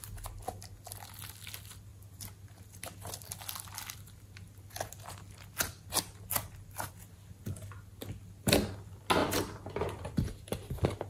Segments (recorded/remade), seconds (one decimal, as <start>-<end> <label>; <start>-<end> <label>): 0.0-11.1 recorded